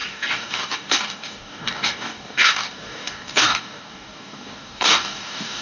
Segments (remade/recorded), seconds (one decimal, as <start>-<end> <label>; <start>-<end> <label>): 0.0-5.6 remade